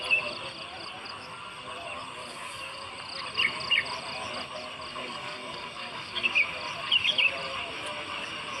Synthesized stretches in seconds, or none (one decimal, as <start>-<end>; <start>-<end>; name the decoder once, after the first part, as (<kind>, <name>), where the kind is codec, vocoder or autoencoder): 2.3-2.9 (codec, DAC); 4.9-6.3